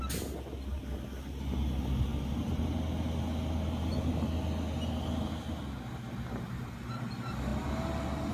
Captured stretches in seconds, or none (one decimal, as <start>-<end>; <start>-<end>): 0.0-8.3